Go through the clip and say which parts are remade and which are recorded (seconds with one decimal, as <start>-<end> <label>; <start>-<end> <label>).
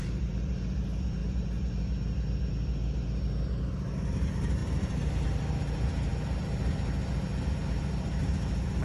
0.0-8.8 recorded